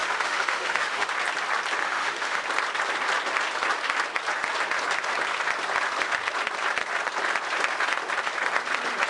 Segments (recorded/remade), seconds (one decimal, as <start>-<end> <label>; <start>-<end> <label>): 0.0-1.1 remade; 1.1-1.8 recorded; 1.8-2.4 remade; 2.4-9.1 recorded